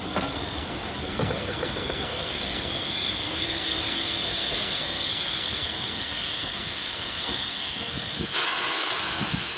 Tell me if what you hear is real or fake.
fake